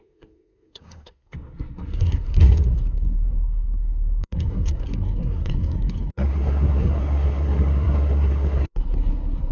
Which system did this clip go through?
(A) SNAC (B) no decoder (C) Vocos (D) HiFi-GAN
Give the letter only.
A